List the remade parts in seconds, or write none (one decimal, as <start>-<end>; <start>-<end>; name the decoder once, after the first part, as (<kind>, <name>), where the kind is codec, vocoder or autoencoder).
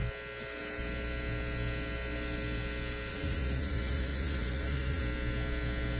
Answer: 3.1-5.0 (vocoder, Vocos)